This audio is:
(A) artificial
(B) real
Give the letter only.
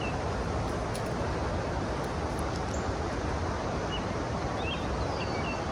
B